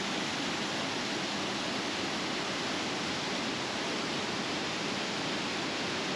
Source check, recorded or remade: recorded